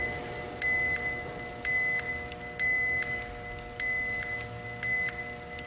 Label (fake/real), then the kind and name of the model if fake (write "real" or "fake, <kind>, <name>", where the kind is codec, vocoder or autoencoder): real